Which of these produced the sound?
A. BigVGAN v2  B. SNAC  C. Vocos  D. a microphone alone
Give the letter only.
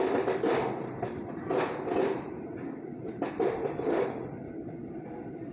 D